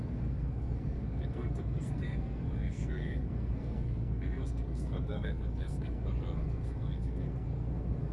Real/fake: fake